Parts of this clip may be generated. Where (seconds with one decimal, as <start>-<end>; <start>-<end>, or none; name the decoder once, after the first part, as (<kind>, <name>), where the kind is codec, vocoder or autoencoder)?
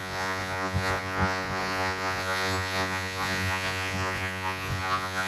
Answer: 0.0-5.3 (vocoder, Vocos)